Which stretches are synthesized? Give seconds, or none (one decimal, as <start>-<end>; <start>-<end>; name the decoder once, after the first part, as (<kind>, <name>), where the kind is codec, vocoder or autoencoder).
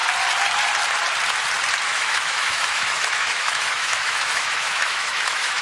1.9-5.6 (autoencoder, DAC-VAE)